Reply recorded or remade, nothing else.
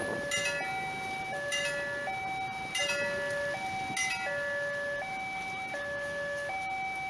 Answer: recorded